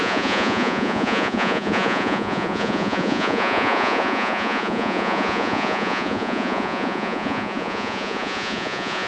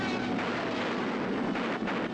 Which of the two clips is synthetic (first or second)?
first